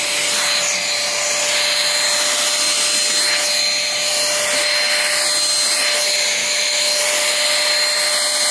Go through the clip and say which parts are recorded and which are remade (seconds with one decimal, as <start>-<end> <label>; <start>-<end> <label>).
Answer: 0.0-6.4 recorded; 6.4-7.0 remade; 7.0-8.5 recorded